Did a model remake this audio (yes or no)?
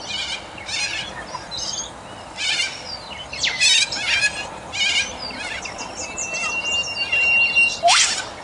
no